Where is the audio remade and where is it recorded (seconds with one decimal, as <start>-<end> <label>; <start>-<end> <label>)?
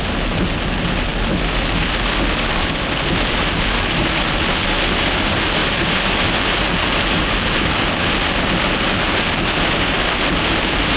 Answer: 0.0-11.0 recorded